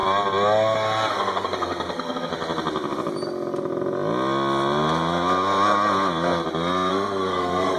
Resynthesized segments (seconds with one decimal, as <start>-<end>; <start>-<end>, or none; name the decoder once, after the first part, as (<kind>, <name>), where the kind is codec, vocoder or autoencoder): 1.1-2.3 (codec, SNAC); 6.9-7.8